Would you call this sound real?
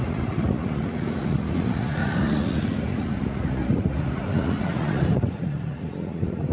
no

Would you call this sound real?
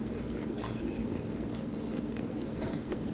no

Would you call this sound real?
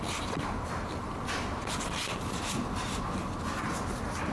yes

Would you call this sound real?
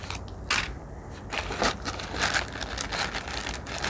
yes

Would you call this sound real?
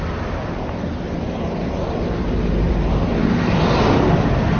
yes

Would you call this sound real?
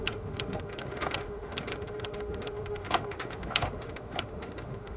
no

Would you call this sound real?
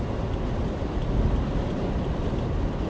yes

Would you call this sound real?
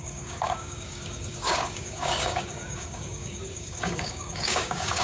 no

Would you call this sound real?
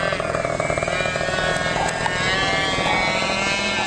yes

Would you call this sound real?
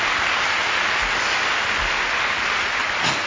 yes